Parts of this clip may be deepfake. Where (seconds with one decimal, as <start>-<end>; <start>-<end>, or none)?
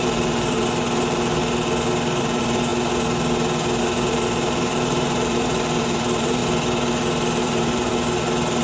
0.0-1.4; 2.2-2.7; 3.8-6.4; 7.4-7.9